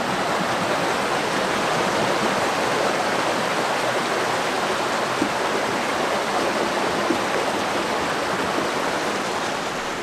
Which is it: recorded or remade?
recorded